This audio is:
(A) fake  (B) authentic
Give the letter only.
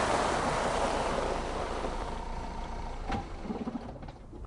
A